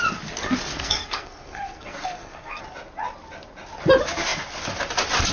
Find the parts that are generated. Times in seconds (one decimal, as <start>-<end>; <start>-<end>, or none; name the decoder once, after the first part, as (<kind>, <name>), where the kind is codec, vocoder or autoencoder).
0.7-2.6 (codec, SNAC)